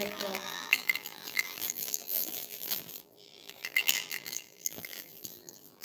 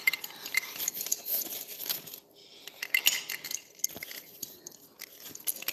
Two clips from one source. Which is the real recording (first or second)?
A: second